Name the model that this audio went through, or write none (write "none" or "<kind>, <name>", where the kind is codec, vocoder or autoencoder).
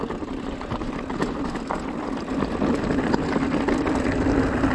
none